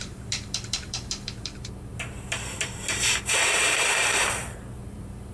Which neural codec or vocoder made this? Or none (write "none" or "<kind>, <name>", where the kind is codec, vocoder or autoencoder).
vocoder, BigVGAN v2